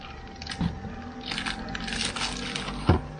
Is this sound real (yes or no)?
yes